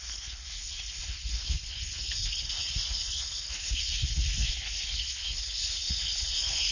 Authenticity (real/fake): fake